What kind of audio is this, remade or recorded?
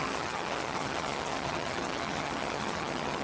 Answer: remade